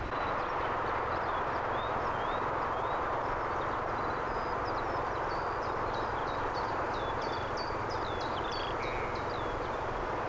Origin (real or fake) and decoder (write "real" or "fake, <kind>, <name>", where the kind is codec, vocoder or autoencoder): real